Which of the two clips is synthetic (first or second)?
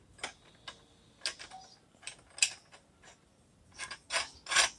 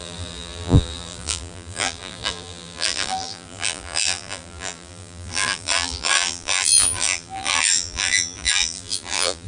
second